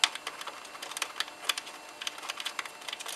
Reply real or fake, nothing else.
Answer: real